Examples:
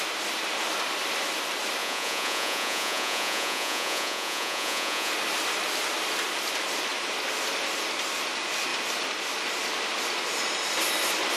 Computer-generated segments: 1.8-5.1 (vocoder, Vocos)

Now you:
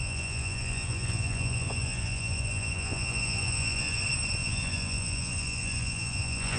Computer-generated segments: 0.0-4.0 (vocoder, Vocos); 4.4-6.6

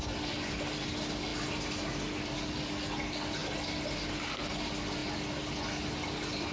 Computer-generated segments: none

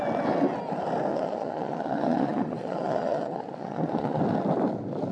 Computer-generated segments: 1.1-4.2 (vocoder, Vocos)

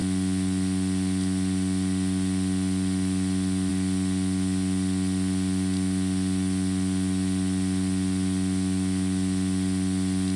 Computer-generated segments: none